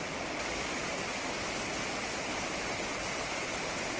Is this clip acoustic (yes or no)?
yes